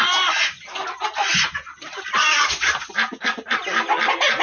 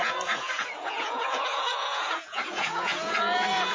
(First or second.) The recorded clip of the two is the first